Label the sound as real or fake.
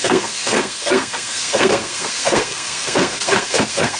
fake